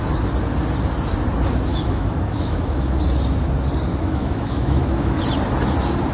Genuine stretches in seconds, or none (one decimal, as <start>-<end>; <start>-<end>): 0.0-1.7; 3.0-3.9; 5.2-6.1